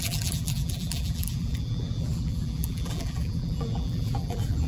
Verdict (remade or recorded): remade